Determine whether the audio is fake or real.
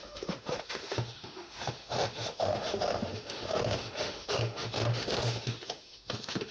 fake